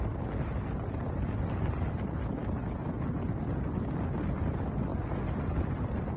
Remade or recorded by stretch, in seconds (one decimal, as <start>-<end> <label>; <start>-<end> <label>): 0.0-6.2 recorded